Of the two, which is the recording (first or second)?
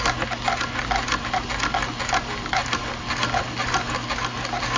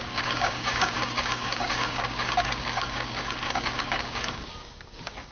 first